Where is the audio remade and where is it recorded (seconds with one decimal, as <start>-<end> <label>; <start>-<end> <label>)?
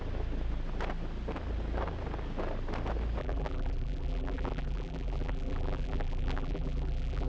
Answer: 0.0-3.2 recorded; 3.2-7.3 remade